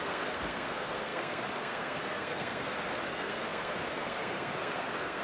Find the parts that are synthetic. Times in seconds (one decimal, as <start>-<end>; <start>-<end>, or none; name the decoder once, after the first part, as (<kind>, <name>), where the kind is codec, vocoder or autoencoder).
0.0-5.2 (codec, SNAC)